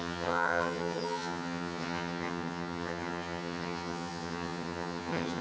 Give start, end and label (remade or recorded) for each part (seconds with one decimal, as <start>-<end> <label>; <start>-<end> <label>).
0.0-5.4 remade